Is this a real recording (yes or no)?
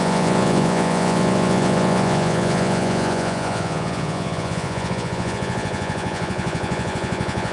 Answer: no